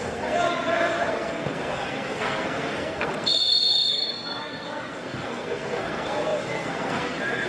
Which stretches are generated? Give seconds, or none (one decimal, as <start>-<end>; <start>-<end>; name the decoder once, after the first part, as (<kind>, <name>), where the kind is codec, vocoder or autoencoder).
0.0-7.5 (codec, SNAC)